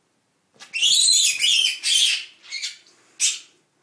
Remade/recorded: recorded